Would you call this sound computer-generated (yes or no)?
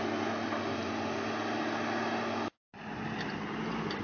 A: no